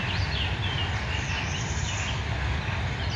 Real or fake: real